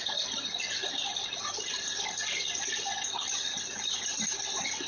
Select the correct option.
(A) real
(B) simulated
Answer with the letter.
A